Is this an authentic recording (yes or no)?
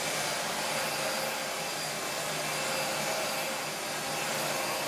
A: yes